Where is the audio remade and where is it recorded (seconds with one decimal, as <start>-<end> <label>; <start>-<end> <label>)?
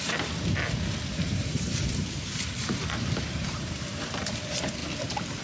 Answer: 0.0-1.1 recorded; 1.1-4.3 remade; 4.3-5.4 recorded